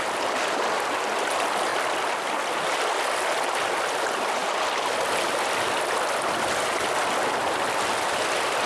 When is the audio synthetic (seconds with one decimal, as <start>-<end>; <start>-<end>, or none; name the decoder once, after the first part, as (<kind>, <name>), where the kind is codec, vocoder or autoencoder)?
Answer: none